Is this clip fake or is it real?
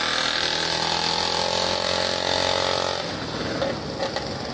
real